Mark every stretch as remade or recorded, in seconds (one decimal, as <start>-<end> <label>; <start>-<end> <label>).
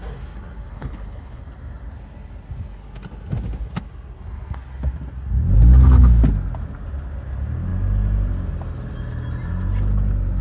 0.0-0.7 recorded; 0.7-1.4 remade; 1.4-10.4 recorded